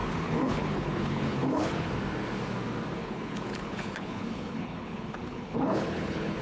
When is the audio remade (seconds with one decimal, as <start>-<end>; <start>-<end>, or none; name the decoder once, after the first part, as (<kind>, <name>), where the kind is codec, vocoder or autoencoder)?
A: 0.0-1.9 (codec, HILCodec); 3.0-6.4

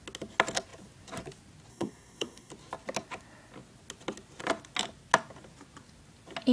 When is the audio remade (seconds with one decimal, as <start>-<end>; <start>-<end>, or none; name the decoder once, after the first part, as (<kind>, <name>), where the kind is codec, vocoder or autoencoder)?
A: 1.7-2.5 (codec, SNAC)

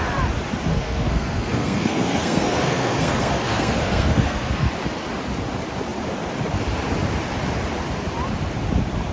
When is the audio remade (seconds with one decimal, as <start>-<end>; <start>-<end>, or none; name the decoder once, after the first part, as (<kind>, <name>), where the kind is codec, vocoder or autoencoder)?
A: 0.7-4.7 (codec, SNAC)

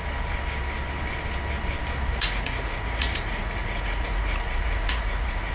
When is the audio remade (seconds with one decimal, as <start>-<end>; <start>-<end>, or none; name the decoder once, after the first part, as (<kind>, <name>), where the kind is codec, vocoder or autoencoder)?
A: 2.1-5.5 (vocoder, Vocos)

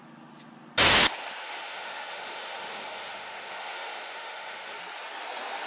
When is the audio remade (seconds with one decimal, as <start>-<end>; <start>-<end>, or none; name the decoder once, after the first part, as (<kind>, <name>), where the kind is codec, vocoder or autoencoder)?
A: 1.4-4.8 (autoencoder, DAC-VAE)

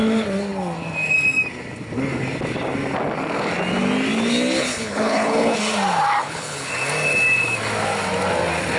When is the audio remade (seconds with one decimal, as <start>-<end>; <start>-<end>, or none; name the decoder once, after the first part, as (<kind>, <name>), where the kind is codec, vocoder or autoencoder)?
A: 4.7-5.6 (codec, HILCodec); 6.2-6.7